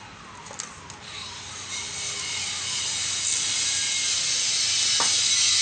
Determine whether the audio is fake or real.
real